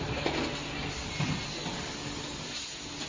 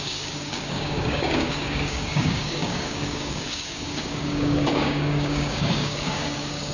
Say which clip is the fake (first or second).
second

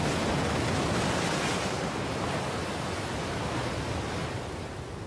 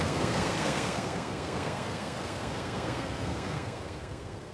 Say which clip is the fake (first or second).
second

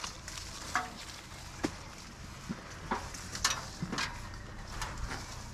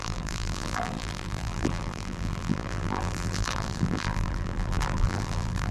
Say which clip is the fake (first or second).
second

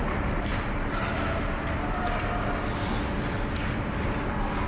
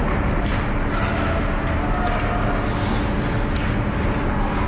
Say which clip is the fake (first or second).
first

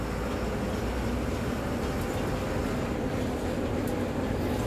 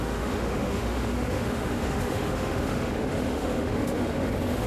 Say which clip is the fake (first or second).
second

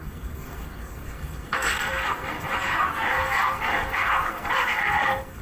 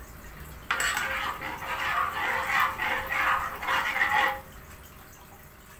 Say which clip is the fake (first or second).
first